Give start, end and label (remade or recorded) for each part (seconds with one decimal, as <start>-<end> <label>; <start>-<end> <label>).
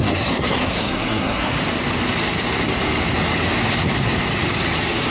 0.0-1.6 remade; 1.6-5.1 recorded